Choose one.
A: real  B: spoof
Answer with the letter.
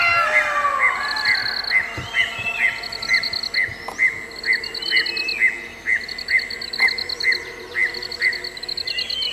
A